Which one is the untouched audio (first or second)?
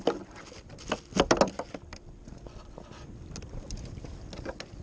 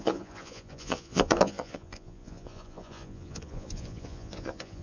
first